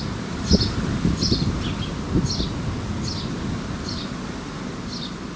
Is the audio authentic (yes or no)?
yes